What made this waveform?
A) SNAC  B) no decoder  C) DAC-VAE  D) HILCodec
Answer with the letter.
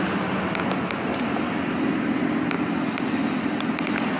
B